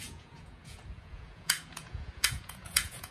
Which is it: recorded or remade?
remade